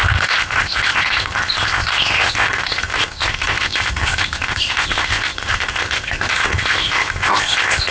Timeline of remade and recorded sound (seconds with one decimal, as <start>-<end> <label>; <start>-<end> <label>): 0.0-7.9 remade